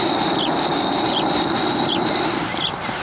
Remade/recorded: remade